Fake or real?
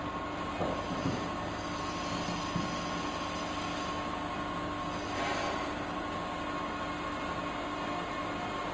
real